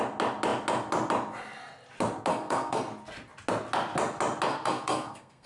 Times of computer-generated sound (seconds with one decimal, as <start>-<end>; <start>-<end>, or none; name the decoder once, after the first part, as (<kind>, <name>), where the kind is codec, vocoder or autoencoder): 2.3-2.9 (codec, SNAC); 4.5-5.5